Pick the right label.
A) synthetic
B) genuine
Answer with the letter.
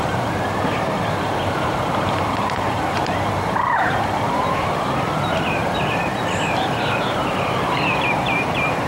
A